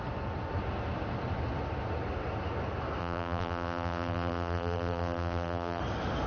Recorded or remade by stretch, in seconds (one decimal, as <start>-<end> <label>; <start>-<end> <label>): 0.0-3.0 recorded; 3.0-5.8 remade; 5.8-6.3 recorded